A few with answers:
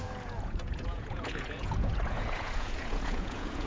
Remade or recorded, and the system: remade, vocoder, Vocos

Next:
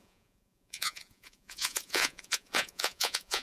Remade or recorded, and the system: remade, vocoder, Vocos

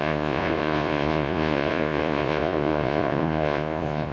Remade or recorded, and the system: remade, vocoder, Vocos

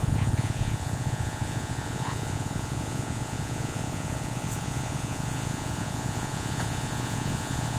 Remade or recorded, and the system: remade, vocoder, Vocos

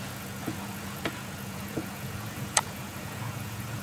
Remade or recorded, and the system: remade, vocoder, Vocos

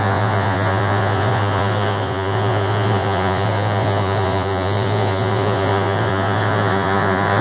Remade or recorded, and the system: remade, vocoder, Vocos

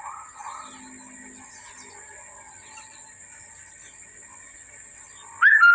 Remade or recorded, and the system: recorded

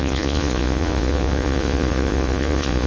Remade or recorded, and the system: remade, vocoder, Vocos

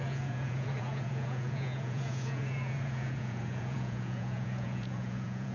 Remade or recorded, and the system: remade, vocoder, Vocos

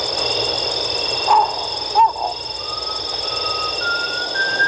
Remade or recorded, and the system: recorded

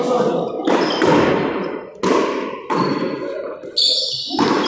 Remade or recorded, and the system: recorded